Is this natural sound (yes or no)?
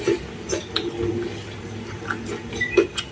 yes